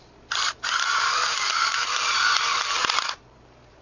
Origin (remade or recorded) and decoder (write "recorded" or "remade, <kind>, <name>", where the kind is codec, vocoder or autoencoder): remade, vocoder, BigVGAN v2